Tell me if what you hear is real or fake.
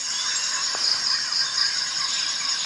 real